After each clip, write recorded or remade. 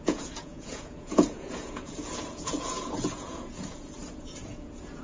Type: remade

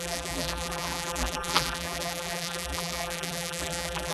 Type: remade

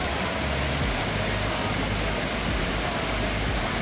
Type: recorded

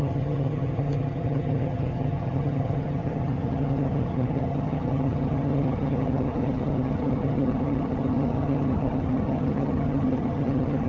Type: remade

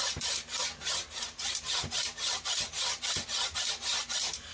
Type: recorded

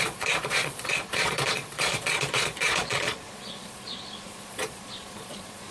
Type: remade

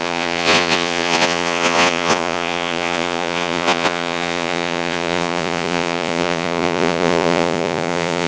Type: remade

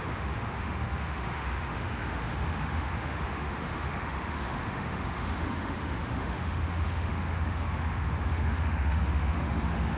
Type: remade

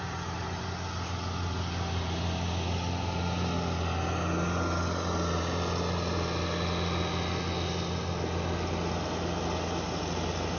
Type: recorded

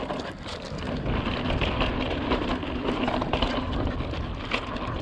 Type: recorded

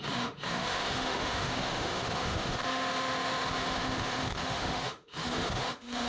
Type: remade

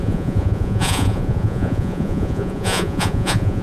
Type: remade